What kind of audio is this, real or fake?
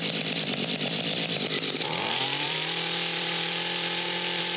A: fake